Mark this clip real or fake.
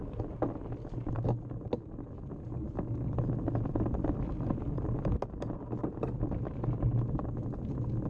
real